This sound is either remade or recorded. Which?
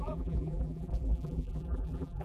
remade